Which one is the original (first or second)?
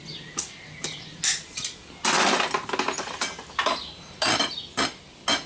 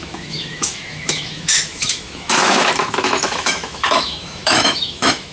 first